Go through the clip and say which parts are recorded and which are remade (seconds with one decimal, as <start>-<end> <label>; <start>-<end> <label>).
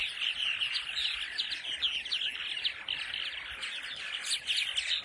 0.0-5.0 recorded